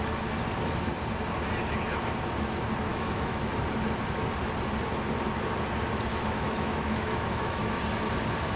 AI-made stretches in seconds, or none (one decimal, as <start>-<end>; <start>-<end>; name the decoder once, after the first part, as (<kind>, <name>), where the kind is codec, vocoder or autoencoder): 2.9-3.5 (autoencoder, DAC-VAE); 6.1-7.8